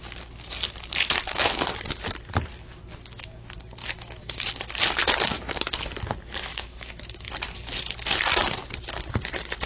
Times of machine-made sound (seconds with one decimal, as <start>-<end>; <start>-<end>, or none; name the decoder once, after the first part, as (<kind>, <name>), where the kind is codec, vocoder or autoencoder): 3.8-4.5 (autoencoder, DAC-VAE); 6.5-7.3